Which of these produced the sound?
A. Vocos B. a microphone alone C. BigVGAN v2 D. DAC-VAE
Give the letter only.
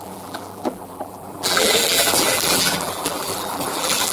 C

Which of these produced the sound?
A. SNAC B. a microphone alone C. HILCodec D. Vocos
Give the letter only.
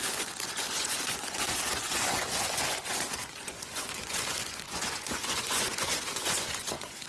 D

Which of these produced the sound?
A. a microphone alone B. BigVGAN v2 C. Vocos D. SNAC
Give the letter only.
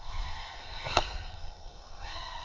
D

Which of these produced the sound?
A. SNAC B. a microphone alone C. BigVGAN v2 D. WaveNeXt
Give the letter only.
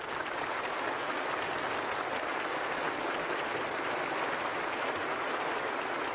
B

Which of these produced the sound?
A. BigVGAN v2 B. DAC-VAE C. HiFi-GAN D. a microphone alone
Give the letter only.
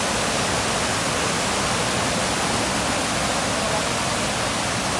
D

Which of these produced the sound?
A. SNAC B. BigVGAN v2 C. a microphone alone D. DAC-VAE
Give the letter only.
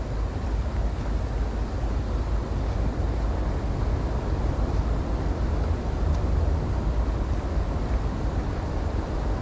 C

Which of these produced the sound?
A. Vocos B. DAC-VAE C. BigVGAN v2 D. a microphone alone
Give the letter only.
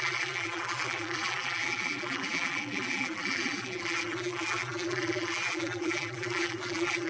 C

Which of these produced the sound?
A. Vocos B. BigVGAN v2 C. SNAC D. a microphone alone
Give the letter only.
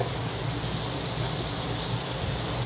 D